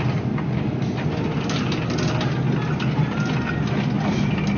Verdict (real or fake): real